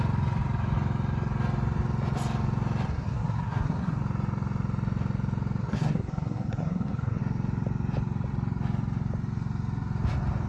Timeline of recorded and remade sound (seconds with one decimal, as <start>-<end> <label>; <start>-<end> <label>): 0.0-2.9 recorded; 2.9-4.0 remade; 4.0-5.6 recorded; 5.6-7.2 remade; 7.2-10.5 recorded